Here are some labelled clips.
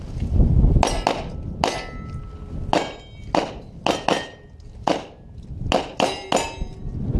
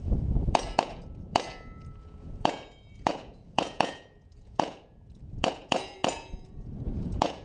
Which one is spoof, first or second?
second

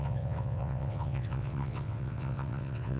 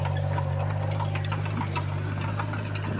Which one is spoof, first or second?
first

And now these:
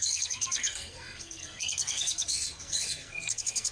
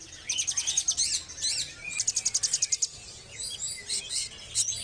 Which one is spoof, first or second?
first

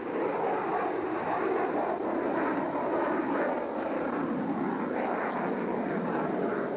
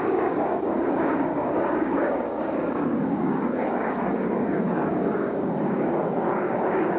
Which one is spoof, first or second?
second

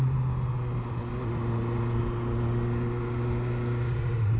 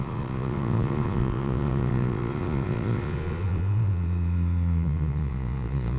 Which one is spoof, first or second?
second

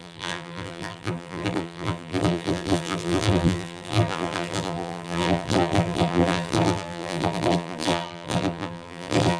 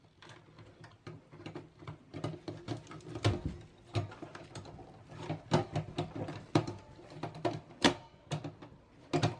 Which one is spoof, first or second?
first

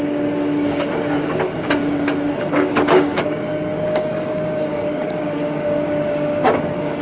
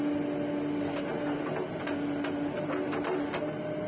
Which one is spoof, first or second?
first